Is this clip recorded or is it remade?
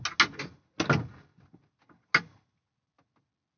recorded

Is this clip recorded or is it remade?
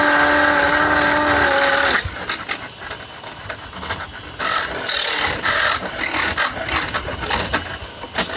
recorded